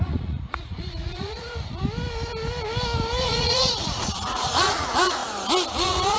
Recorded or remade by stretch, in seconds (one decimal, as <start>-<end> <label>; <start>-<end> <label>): 0.0-1.8 remade; 1.8-3.2 recorded; 3.2-5.2 remade; 5.2-5.7 recorded; 5.7-6.2 remade